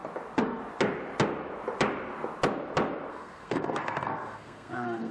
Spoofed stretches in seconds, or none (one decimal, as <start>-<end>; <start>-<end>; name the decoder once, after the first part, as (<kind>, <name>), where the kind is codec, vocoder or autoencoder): 3.1-5.1 (codec, SNAC)

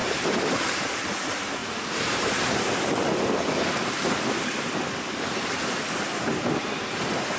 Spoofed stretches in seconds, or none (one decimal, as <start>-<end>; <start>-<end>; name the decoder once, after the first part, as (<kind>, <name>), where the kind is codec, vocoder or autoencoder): 0.0-7.4 (vocoder, BigVGAN v2)

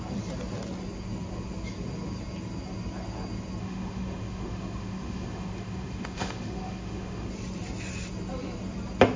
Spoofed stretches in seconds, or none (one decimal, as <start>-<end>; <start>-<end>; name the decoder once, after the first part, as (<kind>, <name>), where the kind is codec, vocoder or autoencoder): 3.6-7.3 (autoencoder, DAC-VAE)

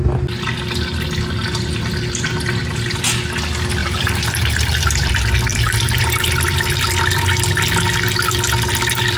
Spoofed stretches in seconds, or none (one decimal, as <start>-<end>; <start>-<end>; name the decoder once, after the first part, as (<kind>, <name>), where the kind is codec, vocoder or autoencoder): 3.8-5.1 (vocoder, BigVGAN v2); 5.5-6.3

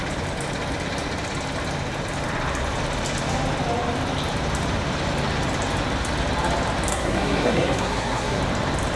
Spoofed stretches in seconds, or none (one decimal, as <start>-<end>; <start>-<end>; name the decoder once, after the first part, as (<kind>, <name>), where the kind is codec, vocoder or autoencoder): 6.9-8.4 (codec, SNAC)

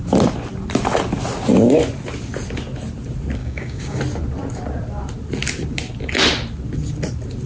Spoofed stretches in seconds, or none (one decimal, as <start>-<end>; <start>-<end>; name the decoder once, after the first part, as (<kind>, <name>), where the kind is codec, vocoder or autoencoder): 3.4-4.0 (codec, DAC)